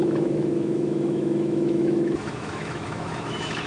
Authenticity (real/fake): fake